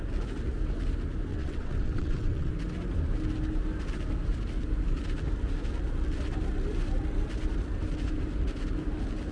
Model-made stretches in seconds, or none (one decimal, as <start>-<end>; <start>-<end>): 1.3-2.5